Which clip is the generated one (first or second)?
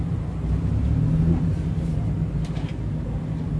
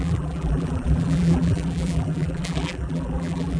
second